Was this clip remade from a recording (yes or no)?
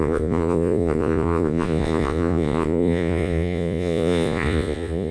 yes